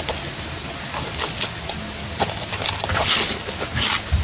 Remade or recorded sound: recorded